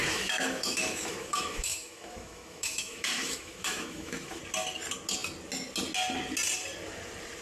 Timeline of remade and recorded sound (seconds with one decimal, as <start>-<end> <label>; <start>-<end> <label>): 0.0-4.4 remade; 4.4-7.4 recorded